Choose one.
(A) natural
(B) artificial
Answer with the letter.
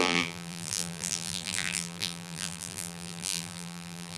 B